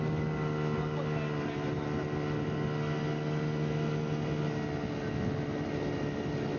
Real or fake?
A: real